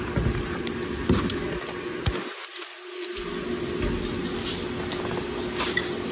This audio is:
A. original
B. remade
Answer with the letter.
A